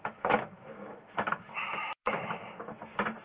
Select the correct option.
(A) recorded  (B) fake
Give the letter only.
B